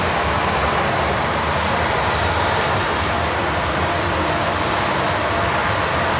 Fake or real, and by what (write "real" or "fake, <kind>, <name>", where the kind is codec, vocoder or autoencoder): real